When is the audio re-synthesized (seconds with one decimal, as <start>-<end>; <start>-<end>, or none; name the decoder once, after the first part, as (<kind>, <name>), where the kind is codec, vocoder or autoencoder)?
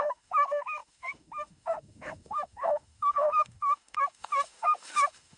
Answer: 0.0-5.4 (autoencoder, DAC-VAE)